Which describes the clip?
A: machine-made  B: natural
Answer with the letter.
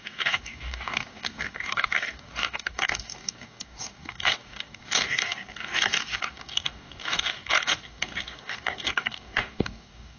A